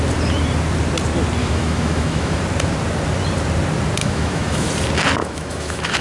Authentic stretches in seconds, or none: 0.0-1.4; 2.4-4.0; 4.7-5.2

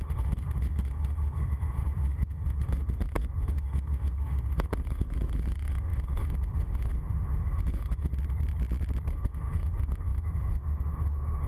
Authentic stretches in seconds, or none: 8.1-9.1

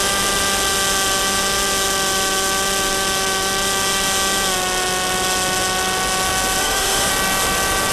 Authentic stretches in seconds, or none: 0.0-6.6; 7.1-7.9

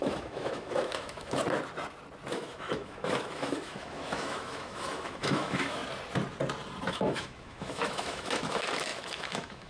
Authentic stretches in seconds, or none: 1.4-2.3; 5.8-6.9

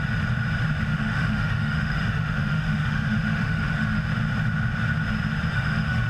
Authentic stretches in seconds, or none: 0.0-0.9; 4.1-5.5

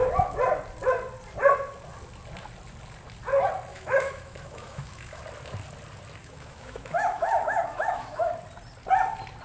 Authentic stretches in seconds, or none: 0.0-3.7; 5.2-6.2; 8.3-9.4